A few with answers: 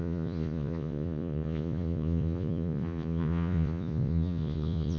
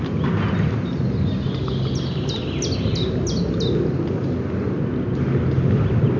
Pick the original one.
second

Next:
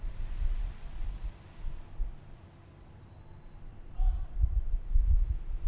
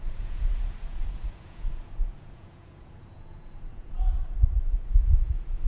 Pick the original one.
first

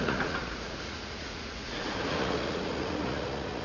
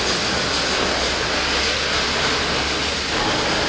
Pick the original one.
second